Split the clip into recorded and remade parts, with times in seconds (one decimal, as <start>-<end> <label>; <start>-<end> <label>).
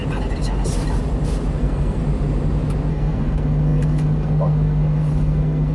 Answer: 0.0-1.6 recorded; 1.6-2.0 remade; 2.0-2.9 recorded; 2.9-5.7 remade